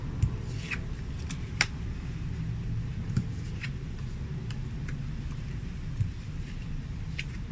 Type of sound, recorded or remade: remade